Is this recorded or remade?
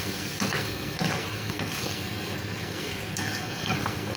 remade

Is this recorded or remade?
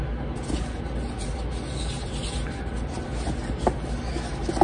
recorded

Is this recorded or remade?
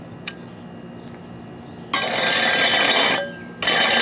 recorded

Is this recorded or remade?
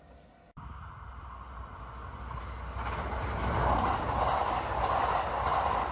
recorded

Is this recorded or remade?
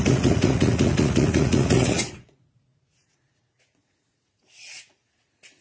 remade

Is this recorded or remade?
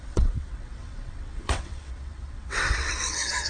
remade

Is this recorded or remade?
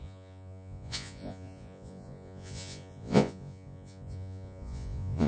remade